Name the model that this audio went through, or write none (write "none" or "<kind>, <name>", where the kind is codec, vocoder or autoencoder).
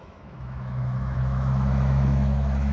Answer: autoencoder, DAC-VAE